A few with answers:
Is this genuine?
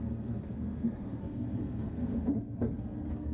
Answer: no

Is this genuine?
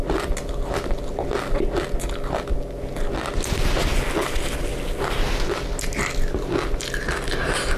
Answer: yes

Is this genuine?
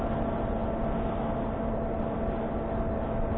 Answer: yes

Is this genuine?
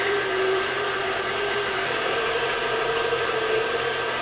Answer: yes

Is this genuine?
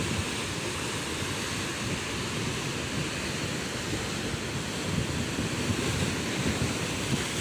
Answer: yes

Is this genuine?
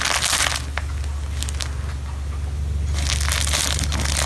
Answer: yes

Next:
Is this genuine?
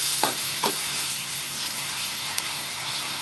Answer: no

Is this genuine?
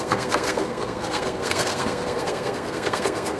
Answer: no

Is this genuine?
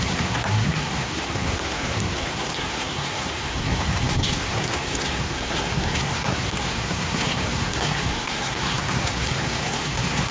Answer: no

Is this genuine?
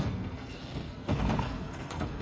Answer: no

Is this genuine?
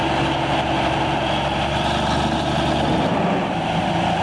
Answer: yes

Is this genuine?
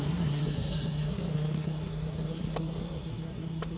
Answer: no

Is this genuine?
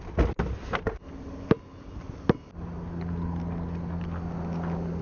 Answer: yes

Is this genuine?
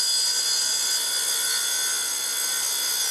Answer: yes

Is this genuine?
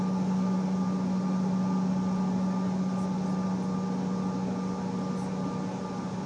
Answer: yes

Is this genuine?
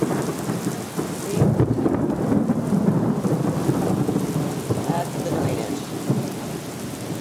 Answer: yes